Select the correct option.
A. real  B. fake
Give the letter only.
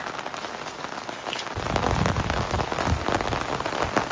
A